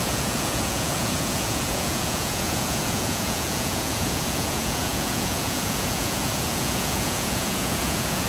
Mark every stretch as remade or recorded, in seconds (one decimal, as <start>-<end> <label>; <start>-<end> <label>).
0.0-8.3 remade